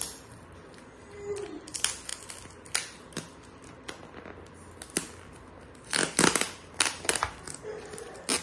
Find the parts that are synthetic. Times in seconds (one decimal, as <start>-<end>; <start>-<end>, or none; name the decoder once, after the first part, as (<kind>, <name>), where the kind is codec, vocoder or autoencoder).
none